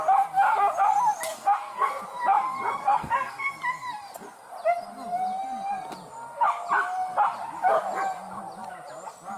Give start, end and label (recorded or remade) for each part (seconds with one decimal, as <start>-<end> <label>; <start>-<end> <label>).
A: 0.0-1.3 recorded; 1.3-1.9 remade; 1.9-2.8 recorded; 2.8-3.5 remade; 3.5-9.4 recorded